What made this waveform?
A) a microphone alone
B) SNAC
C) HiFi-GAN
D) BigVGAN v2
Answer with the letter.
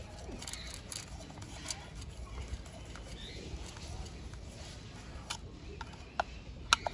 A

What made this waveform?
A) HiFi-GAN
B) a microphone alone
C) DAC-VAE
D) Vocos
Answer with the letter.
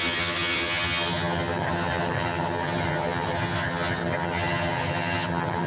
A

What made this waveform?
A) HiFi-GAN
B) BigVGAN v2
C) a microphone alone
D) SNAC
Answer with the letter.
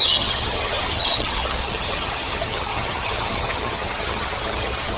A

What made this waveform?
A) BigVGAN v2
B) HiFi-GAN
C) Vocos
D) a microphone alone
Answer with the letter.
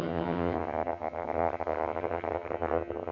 B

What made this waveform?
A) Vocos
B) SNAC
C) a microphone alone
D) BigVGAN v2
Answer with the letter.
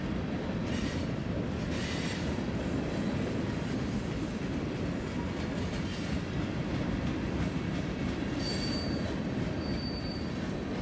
D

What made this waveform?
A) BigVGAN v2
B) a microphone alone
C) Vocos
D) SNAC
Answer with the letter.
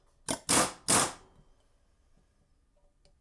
B